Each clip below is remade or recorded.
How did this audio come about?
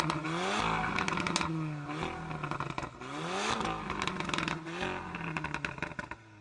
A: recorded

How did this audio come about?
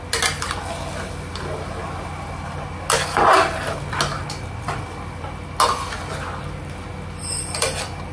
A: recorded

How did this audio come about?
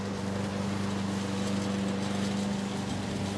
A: recorded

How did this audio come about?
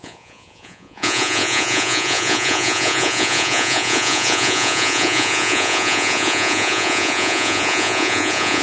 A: remade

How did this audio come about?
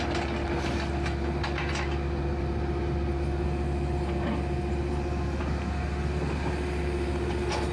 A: recorded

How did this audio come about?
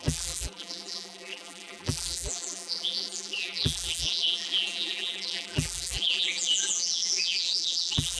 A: remade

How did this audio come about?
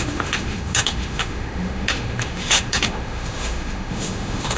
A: remade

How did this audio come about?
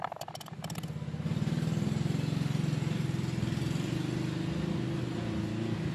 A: recorded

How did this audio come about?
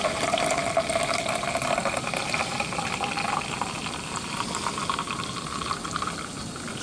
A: recorded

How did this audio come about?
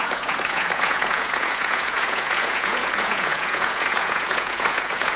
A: remade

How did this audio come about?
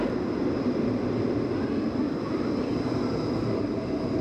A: recorded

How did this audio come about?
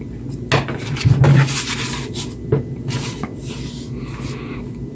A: recorded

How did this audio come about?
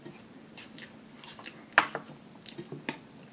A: recorded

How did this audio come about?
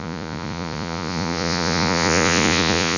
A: remade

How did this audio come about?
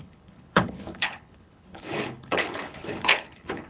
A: remade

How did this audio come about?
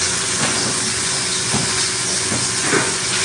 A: remade